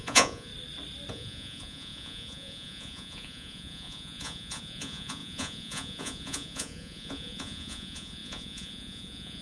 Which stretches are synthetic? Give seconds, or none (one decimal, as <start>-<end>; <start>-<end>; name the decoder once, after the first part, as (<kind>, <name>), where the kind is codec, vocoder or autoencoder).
0.0-0.5 (vocoder, Vocos); 1.1-9.4